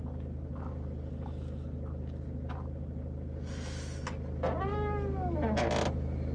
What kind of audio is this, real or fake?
real